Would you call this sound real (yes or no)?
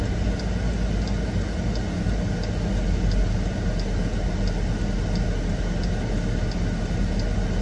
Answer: yes